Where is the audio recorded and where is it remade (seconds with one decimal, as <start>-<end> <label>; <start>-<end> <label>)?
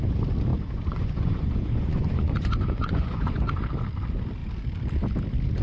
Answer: 0.0-0.5 recorded; 0.5-3.4 remade; 3.4-5.6 recorded